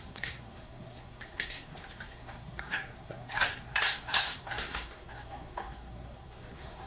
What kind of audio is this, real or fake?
fake